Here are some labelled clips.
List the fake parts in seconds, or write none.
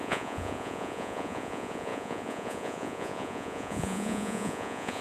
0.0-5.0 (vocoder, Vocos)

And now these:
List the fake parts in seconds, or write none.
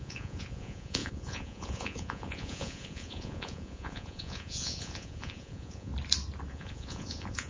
0.0-5.9 (vocoder, Vocos); 6.5-7.5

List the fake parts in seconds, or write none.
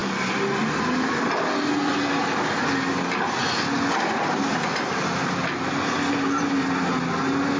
none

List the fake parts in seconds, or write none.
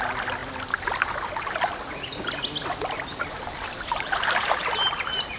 none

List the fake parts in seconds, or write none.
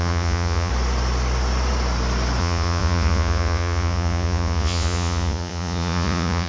0.0-0.7 (vocoder, Vocos); 2.4-6.5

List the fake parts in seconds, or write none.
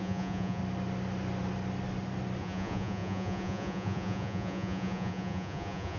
0.0-0.6 (vocoder, Vocos); 2.4-6.0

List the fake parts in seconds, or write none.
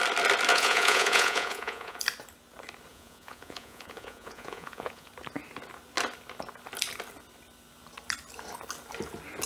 0.5-2.0 (vocoder, Vocos); 2.9-5.1